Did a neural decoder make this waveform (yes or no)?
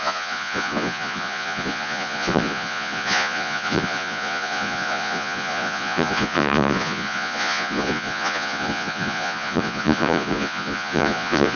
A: yes